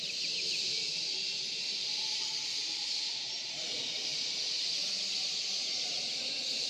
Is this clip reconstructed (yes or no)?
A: no